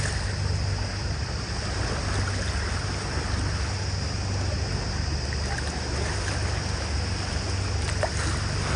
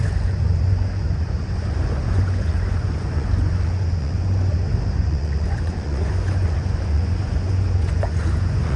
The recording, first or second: first